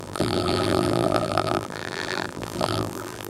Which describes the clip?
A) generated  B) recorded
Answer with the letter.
A